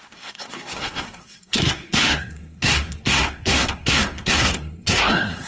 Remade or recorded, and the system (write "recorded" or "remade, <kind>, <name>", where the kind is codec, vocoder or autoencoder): remade, codec, SNAC